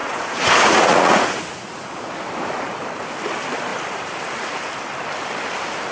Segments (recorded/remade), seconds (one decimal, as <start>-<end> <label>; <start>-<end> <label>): 0.0-1.4 remade; 1.4-5.9 recorded